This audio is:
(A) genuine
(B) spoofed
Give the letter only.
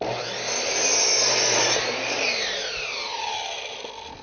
A